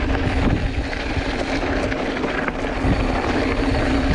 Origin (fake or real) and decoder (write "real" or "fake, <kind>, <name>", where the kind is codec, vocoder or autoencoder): real